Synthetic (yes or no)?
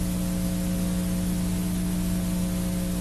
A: no